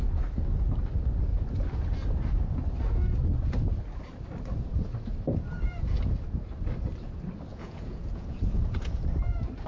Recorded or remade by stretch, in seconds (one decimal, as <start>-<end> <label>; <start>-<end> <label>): 0.0-7.5 recorded; 7.5-9.0 remade; 9.0-9.7 recorded